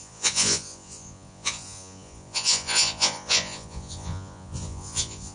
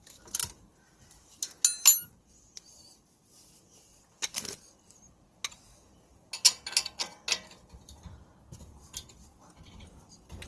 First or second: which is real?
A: second